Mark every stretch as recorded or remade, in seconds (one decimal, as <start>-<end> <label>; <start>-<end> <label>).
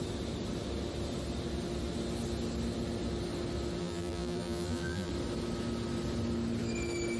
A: 0.0-3.8 recorded; 3.8-5.1 remade; 5.1-7.2 recorded